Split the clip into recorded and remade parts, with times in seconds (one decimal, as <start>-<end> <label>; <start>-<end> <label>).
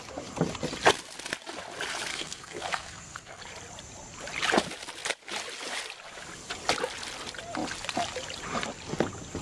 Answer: 0.0-2.1 recorded; 2.1-3.4 remade; 3.4-9.4 recorded